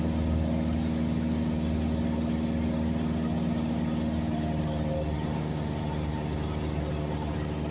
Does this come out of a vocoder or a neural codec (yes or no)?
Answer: no